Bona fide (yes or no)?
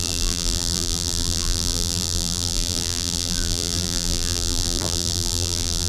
no